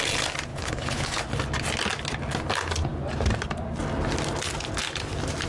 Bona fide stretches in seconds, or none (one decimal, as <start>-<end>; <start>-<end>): 0.0-0.5; 1.2-5.5